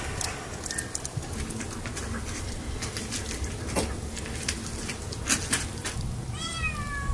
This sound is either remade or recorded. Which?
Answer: recorded